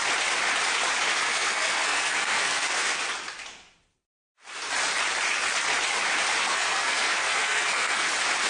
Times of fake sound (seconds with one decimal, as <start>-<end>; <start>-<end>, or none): 1.1-3.0; 6.4-8.1